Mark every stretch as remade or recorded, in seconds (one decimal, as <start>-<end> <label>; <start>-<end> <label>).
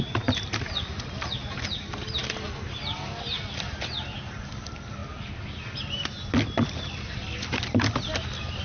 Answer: 0.0-8.6 recorded